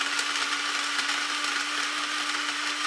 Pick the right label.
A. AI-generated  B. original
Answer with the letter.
B